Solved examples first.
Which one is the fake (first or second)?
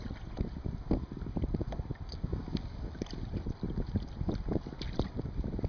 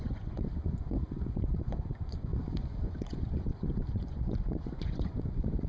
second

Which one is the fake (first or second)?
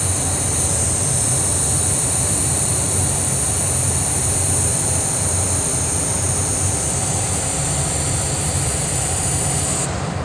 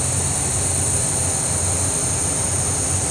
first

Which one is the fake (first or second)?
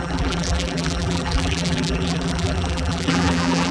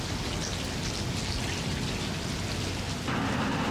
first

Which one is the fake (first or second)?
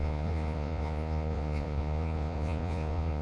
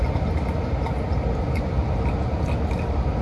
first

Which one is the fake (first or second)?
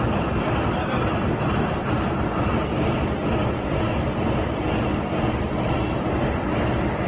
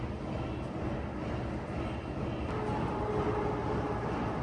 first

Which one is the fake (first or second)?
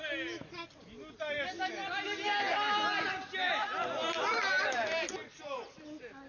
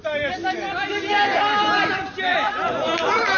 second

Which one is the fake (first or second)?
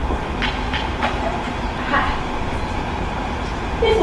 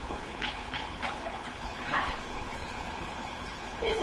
second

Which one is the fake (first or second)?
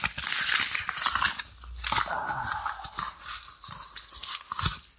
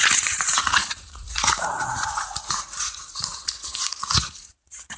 second